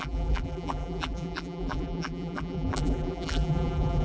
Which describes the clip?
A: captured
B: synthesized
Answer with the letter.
B